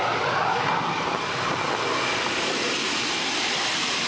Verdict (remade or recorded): recorded